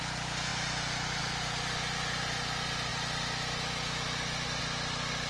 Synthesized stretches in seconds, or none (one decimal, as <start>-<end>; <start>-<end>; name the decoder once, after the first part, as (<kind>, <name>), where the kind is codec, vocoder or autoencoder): none